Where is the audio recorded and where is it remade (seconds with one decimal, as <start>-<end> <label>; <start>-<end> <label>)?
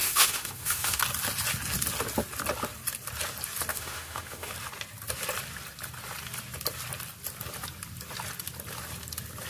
0.0-1.0 remade; 1.0-3.7 recorded; 3.7-4.5 remade; 4.5-9.5 recorded